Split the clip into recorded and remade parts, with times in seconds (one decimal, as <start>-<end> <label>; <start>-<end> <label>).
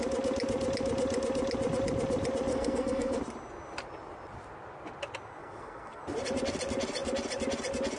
0.0-2.5 recorded; 2.5-3.2 remade; 3.2-5.4 recorded; 5.4-6.0 remade; 6.0-8.0 recorded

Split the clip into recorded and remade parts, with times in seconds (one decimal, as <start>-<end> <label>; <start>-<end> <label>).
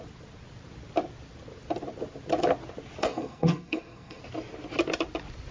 0.0-3.0 recorded; 3.0-4.2 remade; 4.2-5.5 recorded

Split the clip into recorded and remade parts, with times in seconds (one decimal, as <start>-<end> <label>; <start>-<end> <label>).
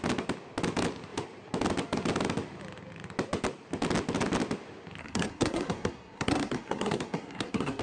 0.0-5.0 recorded; 5.0-7.8 remade